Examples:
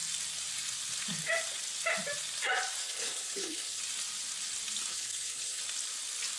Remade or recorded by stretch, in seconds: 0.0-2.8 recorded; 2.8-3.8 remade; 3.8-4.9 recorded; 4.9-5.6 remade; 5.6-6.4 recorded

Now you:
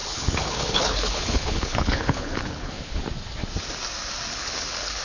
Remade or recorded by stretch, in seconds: 0.0-3.0 remade; 3.0-4.3 recorded; 4.3-5.0 remade

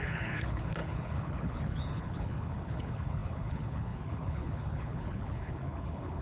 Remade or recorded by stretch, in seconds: 0.0-6.2 remade

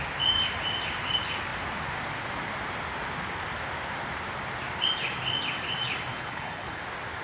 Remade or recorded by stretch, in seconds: 0.0-6.1 recorded; 6.1-6.8 remade; 6.8-7.2 recorded